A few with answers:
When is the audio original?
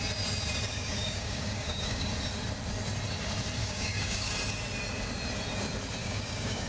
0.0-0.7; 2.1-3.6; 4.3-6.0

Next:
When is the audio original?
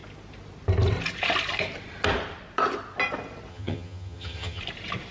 0.0-3.5; 4.6-5.1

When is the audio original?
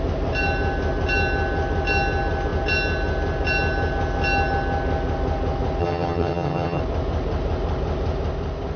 0.0-5.8; 6.8-8.8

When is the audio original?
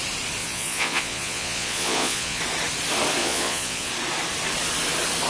0.0-0.4; 2.4-3.2; 3.9-5.3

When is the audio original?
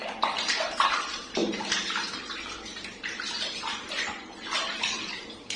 none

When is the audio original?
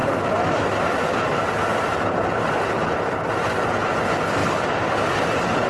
0.0-1.7; 3.8-4.4; 4.9-5.7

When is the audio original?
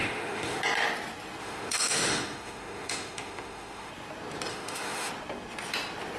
0.6-1.4; 3.9-4.5; 5.1-6.2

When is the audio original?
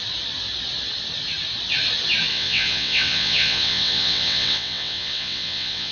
0.0-2.3